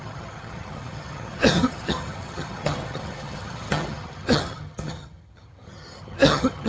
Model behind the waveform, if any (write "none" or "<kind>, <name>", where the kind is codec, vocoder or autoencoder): vocoder, HiFi-GAN